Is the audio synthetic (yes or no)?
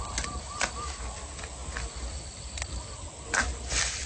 no